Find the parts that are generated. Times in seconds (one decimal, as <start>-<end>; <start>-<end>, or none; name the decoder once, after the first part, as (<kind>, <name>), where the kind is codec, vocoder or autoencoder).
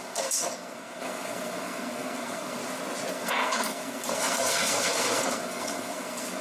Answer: 0.0-2.6 (codec, SNAC); 3.1-6.4